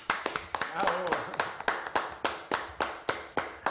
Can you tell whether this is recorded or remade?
recorded